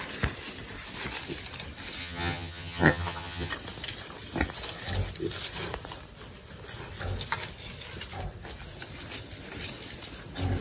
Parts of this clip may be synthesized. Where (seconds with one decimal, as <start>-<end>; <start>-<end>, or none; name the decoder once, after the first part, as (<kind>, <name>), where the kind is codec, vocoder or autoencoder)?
2.0-3.5 (vocoder, HiFi-GAN)